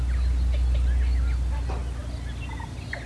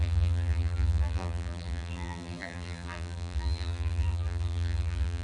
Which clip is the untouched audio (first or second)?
first